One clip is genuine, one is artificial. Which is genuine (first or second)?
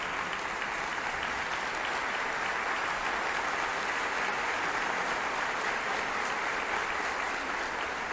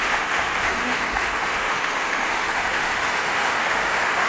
first